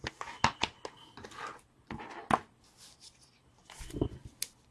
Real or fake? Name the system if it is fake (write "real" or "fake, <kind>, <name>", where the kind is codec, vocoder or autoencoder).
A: real